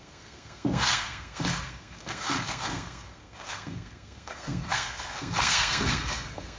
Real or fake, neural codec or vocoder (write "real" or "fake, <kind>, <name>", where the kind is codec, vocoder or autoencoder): fake, codec, SNAC